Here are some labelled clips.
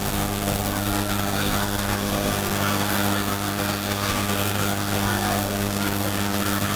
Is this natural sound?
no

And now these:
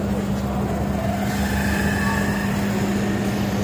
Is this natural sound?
yes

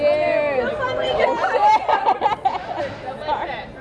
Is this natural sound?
yes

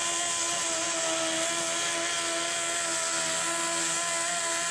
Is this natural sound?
yes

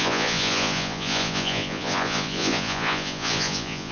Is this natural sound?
no